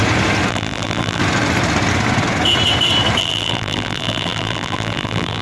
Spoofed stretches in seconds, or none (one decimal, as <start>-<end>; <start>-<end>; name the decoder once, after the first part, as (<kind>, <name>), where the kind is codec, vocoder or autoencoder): 0.5-1.2 (vocoder, BigVGAN v2); 3.2-5.4